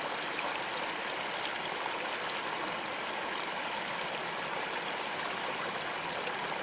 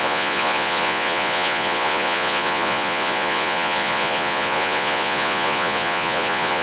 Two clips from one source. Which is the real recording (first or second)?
first